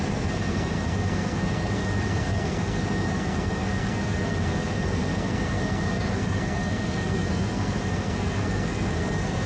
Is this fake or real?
fake